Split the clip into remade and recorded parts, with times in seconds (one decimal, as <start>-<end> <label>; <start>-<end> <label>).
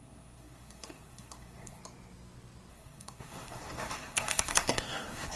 0.0-1.8 remade; 1.8-2.7 recorded; 2.7-5.4 remade